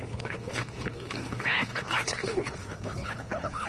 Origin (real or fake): fake